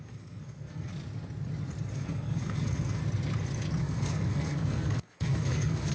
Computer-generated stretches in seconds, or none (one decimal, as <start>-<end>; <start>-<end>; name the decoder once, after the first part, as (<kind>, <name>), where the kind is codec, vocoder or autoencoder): 0.0-0.9 (codec, SNAC); 1.9-3.0; 3.8-5.9